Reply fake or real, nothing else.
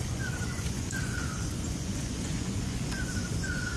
fake